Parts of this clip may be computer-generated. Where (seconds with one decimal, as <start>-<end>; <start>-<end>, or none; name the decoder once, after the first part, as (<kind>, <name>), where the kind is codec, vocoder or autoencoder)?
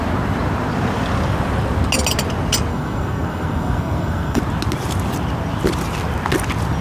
2.7-4.4 (codec, SNAC)